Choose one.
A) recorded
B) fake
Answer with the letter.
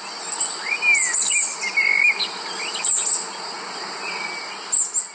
A